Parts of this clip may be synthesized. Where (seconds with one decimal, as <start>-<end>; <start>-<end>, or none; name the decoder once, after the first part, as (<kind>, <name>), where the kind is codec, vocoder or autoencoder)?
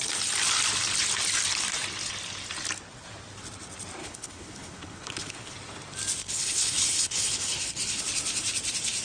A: 4.0-5.5 (codec, HILCodec); 6.2-8.0